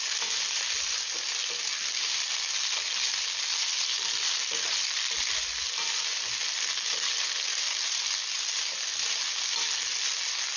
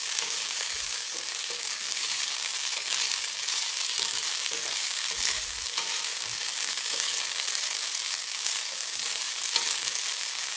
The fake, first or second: second